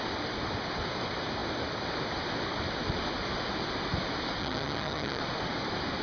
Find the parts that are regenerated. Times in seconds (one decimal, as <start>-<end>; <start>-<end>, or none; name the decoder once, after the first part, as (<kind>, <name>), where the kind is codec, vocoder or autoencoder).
4.4-5.2 (vocoder, HiFi-GAN)